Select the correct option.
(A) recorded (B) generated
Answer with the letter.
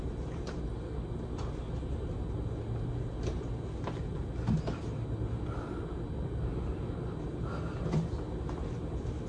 A